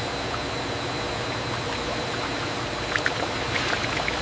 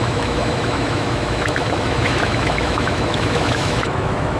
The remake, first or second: second